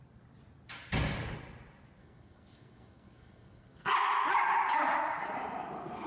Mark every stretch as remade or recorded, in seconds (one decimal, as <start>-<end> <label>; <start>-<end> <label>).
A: 0.0-2.0 recorded; 2.0-3.9 remade; 3.9-6.1 recorded